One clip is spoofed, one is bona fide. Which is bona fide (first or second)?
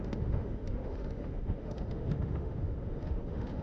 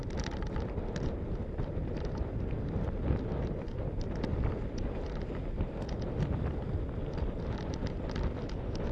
second